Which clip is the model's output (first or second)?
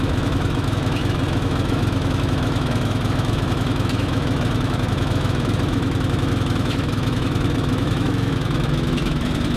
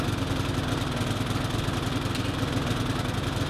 first